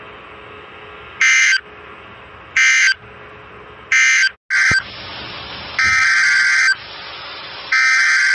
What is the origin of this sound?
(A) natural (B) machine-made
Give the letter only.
A